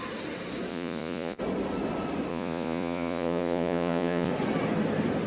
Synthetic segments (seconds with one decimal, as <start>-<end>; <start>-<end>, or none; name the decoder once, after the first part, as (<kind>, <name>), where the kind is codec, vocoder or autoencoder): 0.7-1.4 (vocoder, Vocos); 2.3-4.3